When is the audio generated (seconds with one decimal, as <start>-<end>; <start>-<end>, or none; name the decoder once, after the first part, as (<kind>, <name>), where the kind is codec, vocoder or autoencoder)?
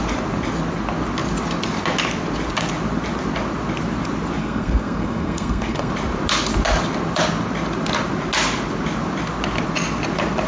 4.4-5.9 (codec, SNAC)